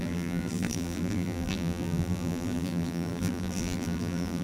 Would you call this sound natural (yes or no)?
no